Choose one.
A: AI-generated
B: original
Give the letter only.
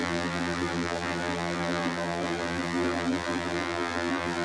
A